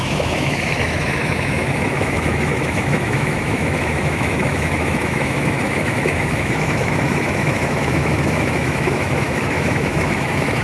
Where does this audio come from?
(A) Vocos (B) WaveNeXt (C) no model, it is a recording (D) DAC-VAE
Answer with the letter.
D